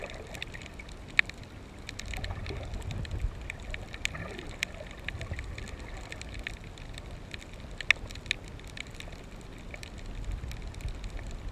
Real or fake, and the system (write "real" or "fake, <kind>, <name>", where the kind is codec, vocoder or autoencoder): real